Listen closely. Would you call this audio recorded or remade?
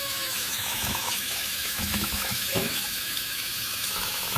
remade